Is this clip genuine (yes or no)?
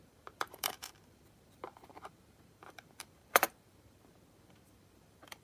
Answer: no